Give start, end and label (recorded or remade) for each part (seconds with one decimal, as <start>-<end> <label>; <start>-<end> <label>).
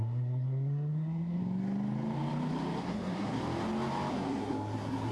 0.0-1.4 remade; 1.4-2.8 recorded; 2.8-3.4 remade; 3.4-4.1 recorded; 4.1-5.1 remade